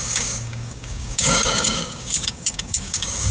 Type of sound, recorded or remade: remade